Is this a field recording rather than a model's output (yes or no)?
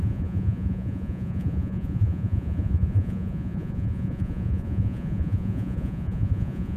no